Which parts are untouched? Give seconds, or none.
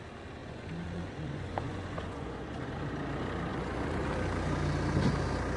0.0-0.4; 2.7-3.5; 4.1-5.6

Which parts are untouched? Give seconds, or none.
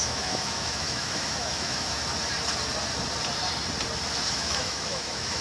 2.0-4.3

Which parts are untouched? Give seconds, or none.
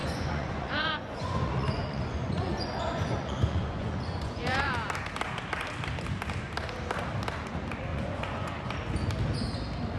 4.7-7.9; 8.7-10.0